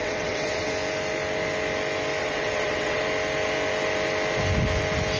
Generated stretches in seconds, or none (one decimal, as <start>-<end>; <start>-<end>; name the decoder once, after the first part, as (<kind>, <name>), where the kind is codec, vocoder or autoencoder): 0.0-0.7 (vocoder, WaveNeXt); 2.2-3.0